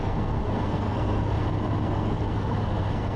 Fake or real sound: fake